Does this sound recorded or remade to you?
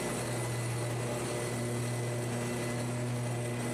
recorded